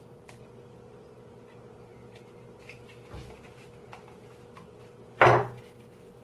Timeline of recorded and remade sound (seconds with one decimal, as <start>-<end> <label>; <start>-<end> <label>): 0.0-6.2 recorded